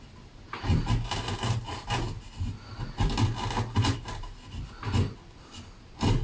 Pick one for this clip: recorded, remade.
recorded